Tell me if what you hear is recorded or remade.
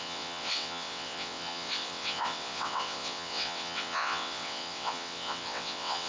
remade